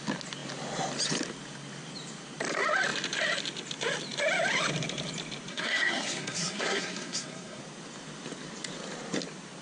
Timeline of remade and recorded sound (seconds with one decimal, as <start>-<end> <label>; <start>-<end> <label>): 0.0-5.5 recorded; 5.5-7.6 remade; 7.6-9.6 recorded